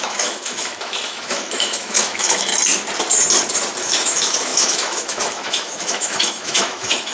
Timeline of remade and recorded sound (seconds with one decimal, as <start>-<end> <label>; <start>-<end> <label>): 0.0-2.5 remade; 2.5-3.8 recorded; 3.8-7.1 remade